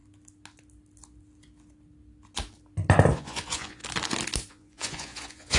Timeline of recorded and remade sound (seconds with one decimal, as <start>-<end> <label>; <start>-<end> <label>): 0.0-3.1 recorded; 3.1-3.8 remade; 3.8-4.5 recorded; 4.5-5.6 remade